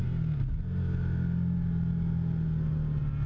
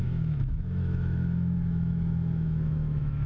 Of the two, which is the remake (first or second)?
second